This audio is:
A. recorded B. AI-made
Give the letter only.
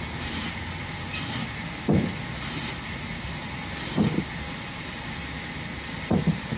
A